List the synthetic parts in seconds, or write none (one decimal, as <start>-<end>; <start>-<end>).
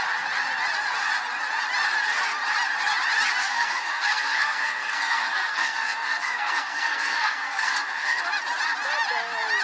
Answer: 3.4-8.2